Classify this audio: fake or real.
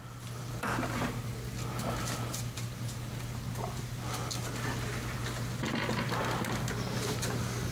real